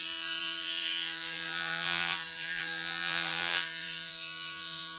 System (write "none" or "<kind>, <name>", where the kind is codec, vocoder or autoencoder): vocoder, BigVGAN v2